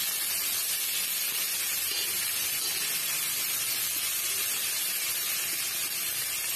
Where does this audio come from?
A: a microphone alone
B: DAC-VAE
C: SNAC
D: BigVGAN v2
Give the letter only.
A